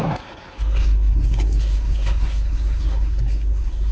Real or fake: fake